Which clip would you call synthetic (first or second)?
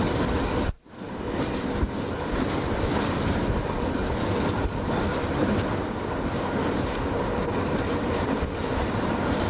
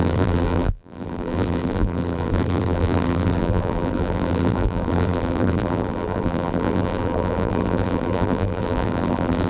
second